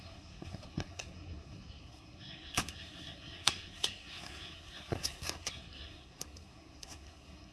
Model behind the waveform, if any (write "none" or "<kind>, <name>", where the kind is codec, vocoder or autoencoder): codec, SNAC